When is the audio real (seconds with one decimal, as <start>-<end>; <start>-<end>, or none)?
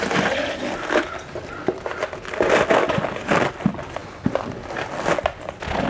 0.0-5.9